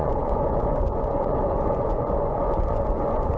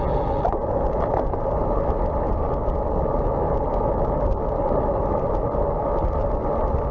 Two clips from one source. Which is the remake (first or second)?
first